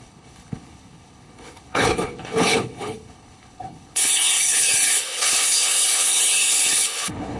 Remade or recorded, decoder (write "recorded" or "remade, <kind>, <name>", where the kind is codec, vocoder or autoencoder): remade, codec, HILCodec